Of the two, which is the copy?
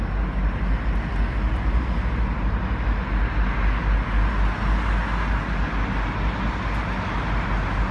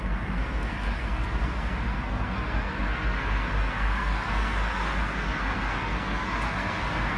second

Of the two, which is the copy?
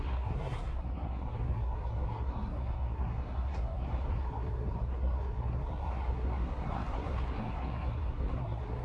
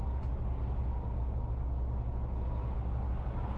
first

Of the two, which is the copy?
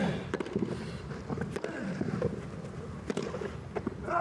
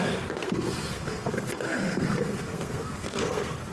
second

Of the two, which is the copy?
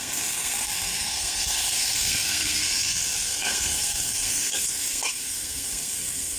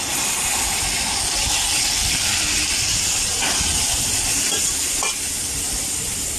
first